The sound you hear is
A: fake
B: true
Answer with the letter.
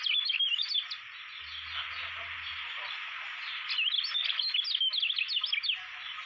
B